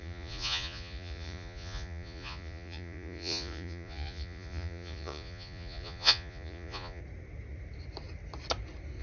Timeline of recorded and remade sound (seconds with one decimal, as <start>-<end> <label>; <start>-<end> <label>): 0.0-7.0 remade; 7.0-9.0 recorded

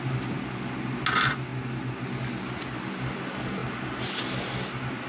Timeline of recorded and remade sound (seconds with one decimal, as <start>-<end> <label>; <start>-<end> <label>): 0.0-5.1 recorded

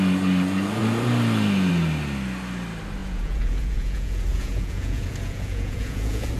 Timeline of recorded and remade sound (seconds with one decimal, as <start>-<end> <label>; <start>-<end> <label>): 0.0-3.0 recorded; 3.0-6.4 remade

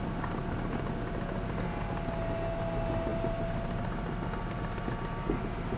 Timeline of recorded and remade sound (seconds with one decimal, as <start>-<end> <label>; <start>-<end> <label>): 0.0-5.8 recorded

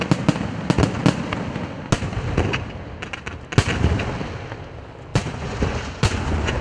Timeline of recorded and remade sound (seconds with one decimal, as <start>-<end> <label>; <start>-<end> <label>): 0.0-5.1 recorded; 5.1-6.6 remade

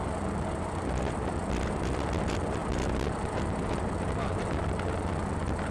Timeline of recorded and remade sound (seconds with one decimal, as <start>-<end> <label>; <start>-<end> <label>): 0.0-5.7 recorded

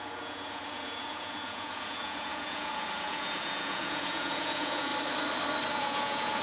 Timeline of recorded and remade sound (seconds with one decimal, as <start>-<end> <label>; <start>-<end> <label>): 0.0-4.9 remade; 4.9-5.7 recorded; 5.7-6.4 remade